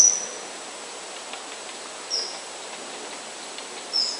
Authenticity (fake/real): real